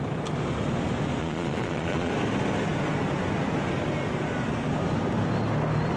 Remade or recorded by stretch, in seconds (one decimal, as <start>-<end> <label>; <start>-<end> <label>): 0.0-1.2 recorded; 1.2-2.1 remade; 2.1-6.0 recorded